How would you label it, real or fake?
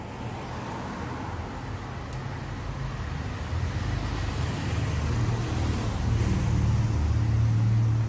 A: real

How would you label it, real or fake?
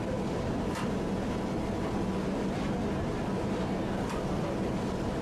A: real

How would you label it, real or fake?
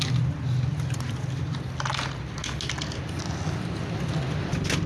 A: real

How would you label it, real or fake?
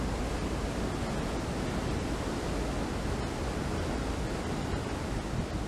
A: real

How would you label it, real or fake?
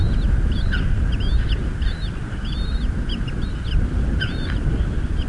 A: real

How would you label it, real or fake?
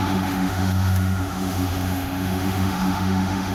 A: fake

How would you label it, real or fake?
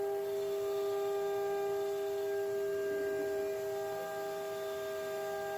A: real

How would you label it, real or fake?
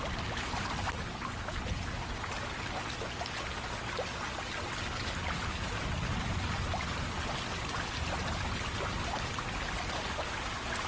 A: real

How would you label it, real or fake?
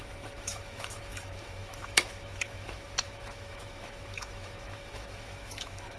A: fake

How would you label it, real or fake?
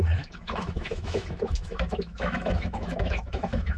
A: fake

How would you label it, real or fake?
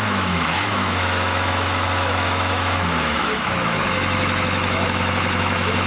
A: fake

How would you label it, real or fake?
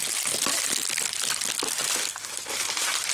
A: real